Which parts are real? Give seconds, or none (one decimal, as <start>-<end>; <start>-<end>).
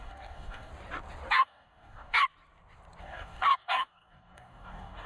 0.7-1.3; 2.2-3.0